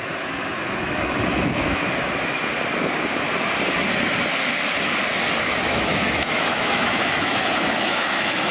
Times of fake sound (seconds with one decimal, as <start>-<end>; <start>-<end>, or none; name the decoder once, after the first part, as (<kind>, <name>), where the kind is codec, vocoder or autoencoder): 0.0-1.8 (autoencoder, DAC-VAE); 5.4-8.5